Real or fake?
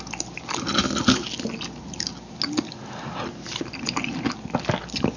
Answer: real